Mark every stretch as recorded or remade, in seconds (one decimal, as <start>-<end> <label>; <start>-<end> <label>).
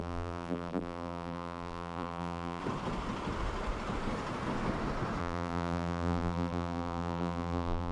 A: 0.0-2.6 remade; 2.6-5.2 recorded; 5.2-7.9 remade